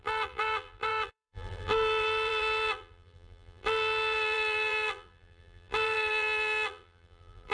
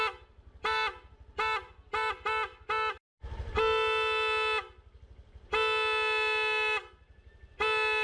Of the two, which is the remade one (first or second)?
first